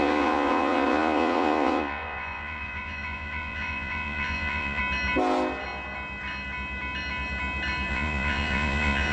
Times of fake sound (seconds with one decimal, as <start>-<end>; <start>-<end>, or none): 0.0-4.8; 7.9-9.1